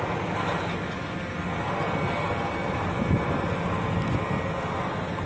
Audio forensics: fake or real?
real